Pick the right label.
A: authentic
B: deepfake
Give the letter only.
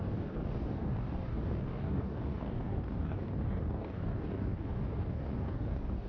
B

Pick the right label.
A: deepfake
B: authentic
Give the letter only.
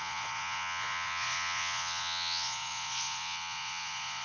A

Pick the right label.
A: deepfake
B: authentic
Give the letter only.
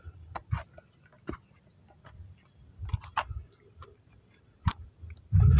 B